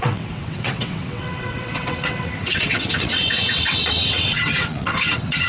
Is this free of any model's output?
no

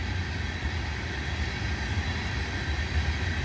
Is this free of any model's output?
yes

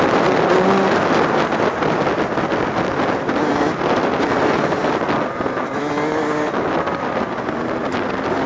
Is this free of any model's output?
yes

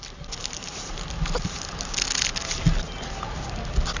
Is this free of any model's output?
yes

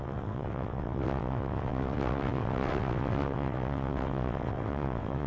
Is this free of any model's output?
no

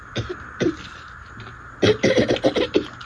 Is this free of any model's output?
yes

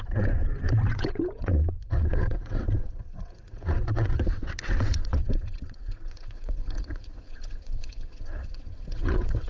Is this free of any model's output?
no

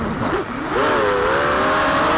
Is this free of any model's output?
yes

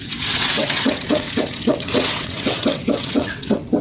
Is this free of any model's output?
no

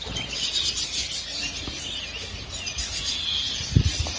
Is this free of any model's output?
yes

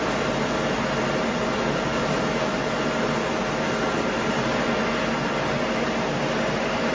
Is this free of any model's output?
yes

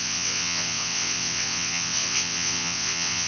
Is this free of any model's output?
no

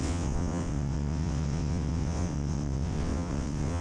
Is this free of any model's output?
no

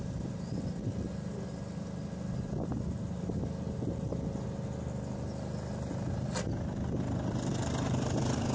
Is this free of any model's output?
yes